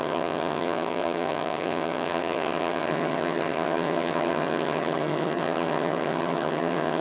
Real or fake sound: fake